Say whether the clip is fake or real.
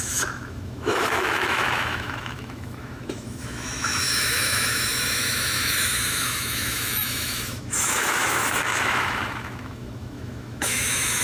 fake